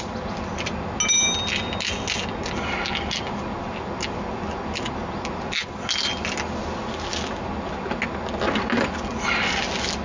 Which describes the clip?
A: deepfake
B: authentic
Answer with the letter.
B